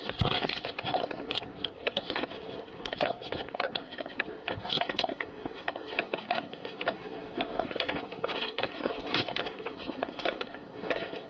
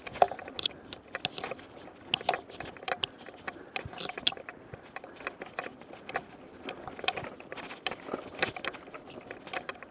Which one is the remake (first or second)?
first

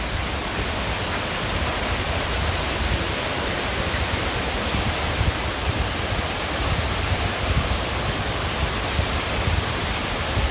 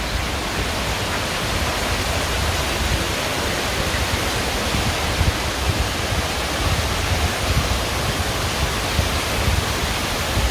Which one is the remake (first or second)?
first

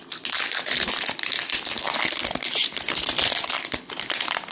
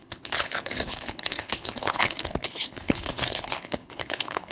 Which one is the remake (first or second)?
second